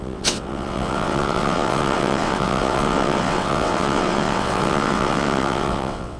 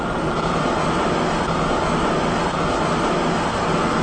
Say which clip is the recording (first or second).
second